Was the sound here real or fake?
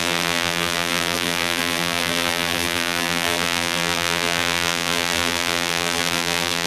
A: fake